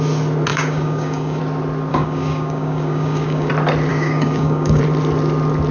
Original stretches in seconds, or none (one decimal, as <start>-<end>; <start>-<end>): 0.0-0.5; 1.4-1.9; 3.5-3.9; 4.8-5.7